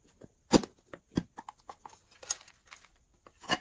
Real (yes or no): yes